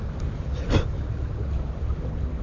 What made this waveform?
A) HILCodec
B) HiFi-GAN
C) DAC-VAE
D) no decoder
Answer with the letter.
D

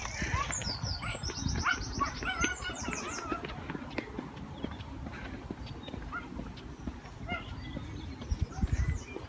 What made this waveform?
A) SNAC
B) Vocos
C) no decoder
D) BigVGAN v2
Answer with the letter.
C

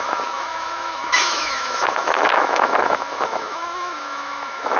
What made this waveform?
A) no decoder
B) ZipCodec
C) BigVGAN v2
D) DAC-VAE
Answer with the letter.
D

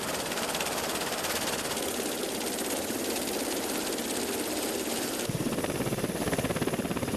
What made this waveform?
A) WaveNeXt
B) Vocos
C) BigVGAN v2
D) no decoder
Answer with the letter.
D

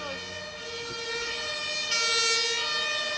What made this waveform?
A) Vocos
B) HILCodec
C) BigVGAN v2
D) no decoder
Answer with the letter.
D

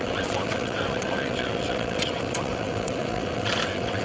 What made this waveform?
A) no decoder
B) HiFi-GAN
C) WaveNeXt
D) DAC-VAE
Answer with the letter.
C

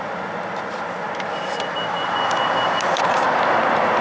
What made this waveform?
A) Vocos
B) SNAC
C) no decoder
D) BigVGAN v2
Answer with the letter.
C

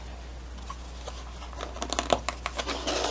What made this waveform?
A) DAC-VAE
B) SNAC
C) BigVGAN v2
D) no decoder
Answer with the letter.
D